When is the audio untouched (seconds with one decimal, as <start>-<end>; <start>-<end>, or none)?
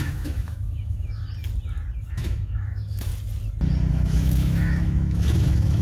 1.2-2.1; 3.1-3.9